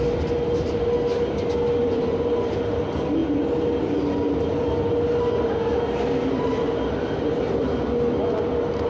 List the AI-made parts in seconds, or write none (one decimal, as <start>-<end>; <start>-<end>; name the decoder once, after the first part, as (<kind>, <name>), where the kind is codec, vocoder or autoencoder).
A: none